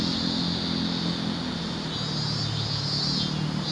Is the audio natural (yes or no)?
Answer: yes